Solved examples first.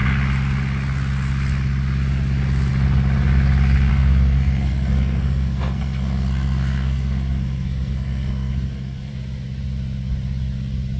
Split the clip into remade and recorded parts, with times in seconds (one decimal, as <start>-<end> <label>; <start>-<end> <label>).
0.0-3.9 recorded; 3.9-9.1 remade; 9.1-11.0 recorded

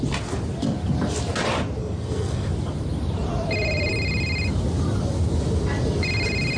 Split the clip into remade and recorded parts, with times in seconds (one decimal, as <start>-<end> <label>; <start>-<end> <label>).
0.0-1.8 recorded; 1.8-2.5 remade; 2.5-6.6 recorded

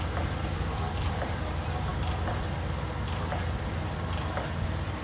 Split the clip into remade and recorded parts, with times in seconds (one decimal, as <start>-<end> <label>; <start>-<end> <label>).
0.0-5.0 recorded

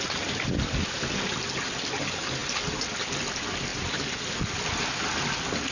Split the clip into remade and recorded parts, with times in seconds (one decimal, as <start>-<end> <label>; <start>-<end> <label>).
0.0-5.7 recorded